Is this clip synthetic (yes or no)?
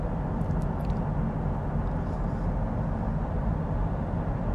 no